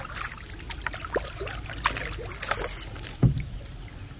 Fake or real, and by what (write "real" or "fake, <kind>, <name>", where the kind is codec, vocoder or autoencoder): real